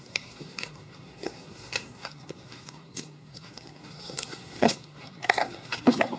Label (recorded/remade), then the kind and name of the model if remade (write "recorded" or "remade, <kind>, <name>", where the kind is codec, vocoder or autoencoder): remade, codec, SNAC